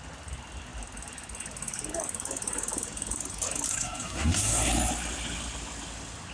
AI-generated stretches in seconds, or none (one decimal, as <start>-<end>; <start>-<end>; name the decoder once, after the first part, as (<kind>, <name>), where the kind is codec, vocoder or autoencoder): 3.7-4.7 (codec, SNAC)